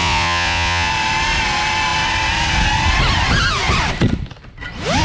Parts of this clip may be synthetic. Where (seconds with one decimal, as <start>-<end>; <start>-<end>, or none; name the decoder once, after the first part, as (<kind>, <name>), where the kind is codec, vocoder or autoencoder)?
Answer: 0.0-0.9 (vocoder, Vocos)